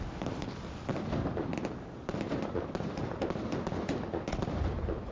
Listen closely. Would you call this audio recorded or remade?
recorded